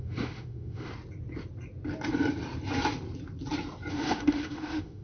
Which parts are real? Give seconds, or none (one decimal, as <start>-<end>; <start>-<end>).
0.9-3.9